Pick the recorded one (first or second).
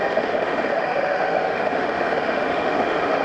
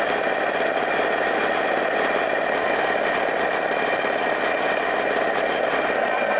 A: second